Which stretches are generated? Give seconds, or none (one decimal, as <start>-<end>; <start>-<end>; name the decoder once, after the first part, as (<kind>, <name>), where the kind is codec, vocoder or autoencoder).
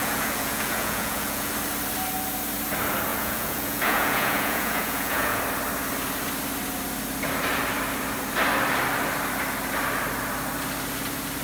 0.0-1.5 (vocoder, Vocos); 3.1-5.4